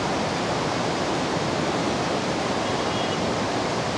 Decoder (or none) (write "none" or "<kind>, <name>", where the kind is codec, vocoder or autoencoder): vocoder, BigVGAN v2